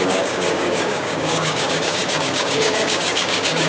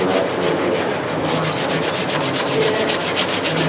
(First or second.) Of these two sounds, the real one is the second